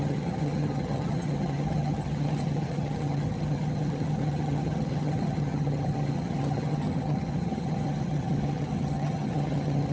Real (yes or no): no